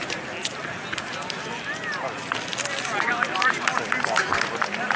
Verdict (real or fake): real